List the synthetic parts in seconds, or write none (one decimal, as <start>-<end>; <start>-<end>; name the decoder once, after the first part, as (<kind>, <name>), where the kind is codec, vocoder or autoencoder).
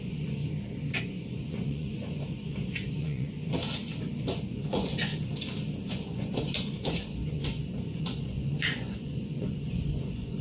0.0-0.4 (vocoder, Vocos); 1.0-3.6; 4.4-5.1; 5.9-10.4